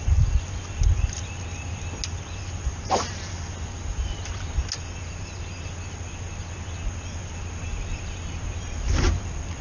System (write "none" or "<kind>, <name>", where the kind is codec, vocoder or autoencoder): none